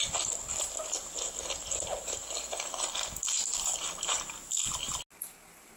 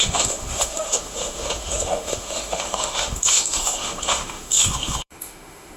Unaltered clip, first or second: first